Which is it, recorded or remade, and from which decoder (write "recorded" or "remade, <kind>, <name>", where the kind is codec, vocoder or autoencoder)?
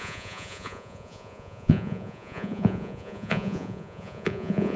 remade, vocoder, Vocos